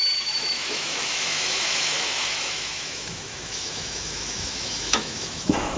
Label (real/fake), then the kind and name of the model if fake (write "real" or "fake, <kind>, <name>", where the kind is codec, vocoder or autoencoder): fake, autoencoder, DAC-VAE